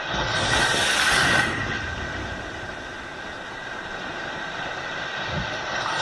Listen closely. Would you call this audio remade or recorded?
recorded